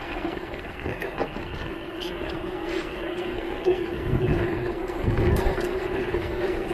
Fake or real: fake